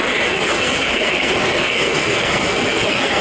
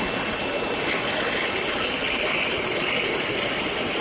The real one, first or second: second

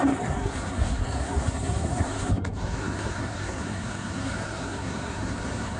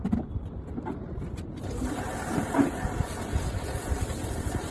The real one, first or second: second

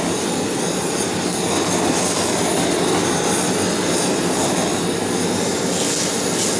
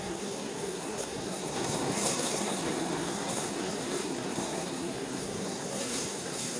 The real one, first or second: first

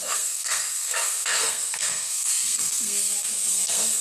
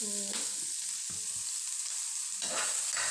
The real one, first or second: second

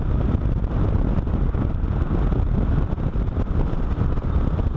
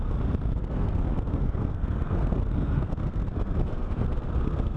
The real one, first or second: first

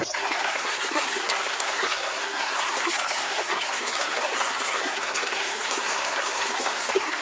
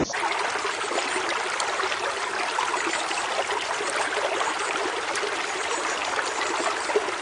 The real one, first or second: second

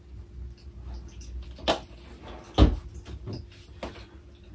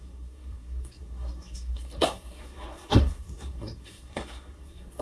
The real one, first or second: first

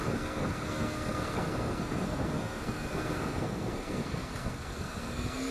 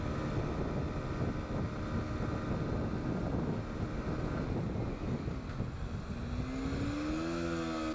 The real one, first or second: second